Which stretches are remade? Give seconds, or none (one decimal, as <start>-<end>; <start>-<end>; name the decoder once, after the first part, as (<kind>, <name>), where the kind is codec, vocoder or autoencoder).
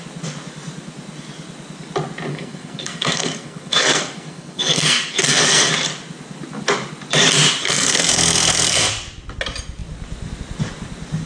2.3-5.7 (codec, SNAC); 7.6-8.9